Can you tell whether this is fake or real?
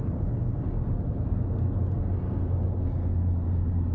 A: real